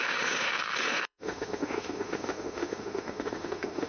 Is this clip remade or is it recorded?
remade